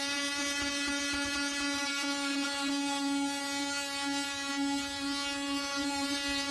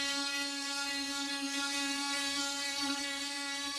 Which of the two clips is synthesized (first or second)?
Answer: second